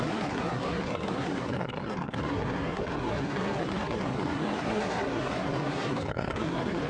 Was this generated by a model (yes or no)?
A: yes